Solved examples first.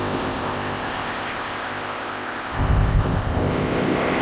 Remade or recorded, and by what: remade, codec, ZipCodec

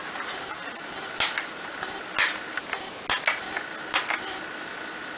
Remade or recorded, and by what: recorded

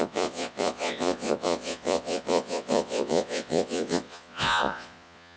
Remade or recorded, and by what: remade, vocoder, Vocos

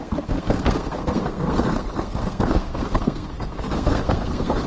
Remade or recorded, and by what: remade, codec, SNAC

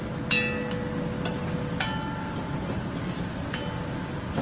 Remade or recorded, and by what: recorded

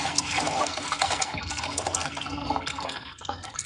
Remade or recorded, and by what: remade, codec, SNAC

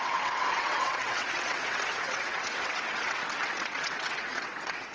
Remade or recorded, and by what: remade, vocoder, WaveNeXt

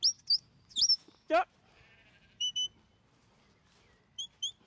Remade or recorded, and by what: recorded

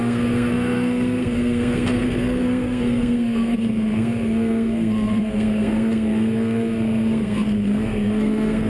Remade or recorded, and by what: remade, codec, SNAC